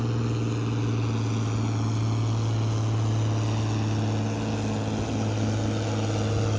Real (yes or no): yes